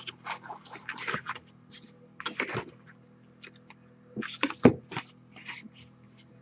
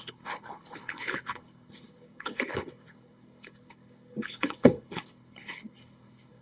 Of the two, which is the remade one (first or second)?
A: second